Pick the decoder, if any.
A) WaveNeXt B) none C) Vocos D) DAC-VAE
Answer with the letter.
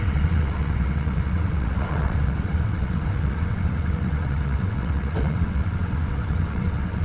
A